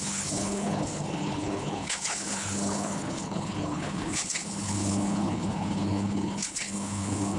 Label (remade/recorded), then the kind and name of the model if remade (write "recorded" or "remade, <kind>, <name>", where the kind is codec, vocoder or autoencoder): remade, codec, HILCodec